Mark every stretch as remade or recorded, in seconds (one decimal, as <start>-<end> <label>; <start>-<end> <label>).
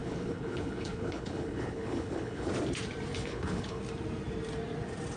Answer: 0.0-2.5 remade; 2.5-3.1 recorded; 3.1-3.8 remade; 3.8-5.2 recorded